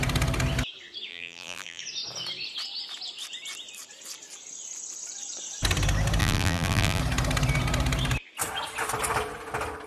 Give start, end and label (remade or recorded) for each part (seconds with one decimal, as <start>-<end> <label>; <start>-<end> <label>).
0.0-1.1 recorded; 1.1-1.8 remade; 1.8-6.2 recorded; 6.2-7.0 remade; 7.0-9.9 recorded